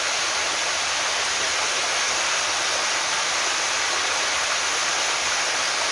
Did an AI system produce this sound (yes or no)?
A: no